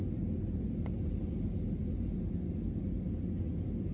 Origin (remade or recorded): recorded